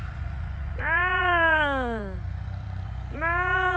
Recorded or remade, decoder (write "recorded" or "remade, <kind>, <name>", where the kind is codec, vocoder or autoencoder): remade, vocoder, Vocos